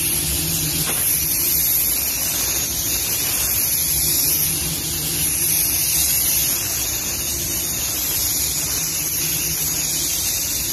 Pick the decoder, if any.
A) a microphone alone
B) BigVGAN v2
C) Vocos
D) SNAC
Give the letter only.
A